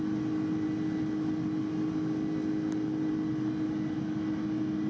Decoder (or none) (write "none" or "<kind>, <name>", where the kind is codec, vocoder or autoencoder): none